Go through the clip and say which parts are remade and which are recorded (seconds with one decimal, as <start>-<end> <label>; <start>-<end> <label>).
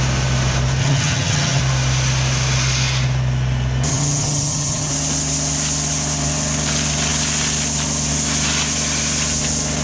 0.0-0.8 recorded; 0.8-1.6 remade; 1.6-3.9 recorded; 3.9-4.9 remade; 4.9-9.8 recorded